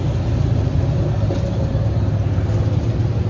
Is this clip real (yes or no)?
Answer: yes